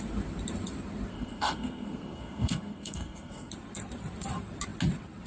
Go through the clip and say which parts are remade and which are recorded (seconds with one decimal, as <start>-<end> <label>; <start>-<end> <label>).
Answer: 0.0-1.1 recorded; 1.1-3.5 remade; 3.5-5.3 recorded